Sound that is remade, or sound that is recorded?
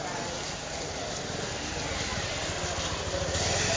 recorded